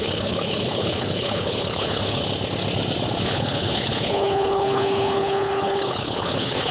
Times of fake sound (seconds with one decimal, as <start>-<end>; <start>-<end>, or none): 0.0-2.2; 3.2-6.7